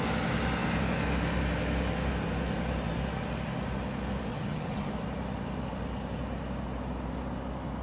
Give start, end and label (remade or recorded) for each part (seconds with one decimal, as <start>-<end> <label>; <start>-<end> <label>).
0.0-4.3 recorded; 4.3-4.9 remade; 4.9-7.8 recorded